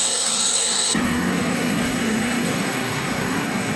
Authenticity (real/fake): fake